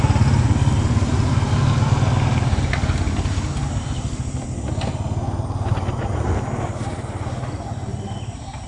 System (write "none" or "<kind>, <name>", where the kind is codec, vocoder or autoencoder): none